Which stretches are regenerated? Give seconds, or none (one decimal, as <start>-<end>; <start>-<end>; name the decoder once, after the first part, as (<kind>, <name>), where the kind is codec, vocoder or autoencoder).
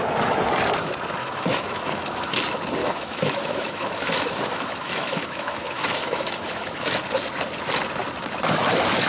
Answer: 1.2-2.3 (autoencoder, DAC-VAE); 2.8-7.0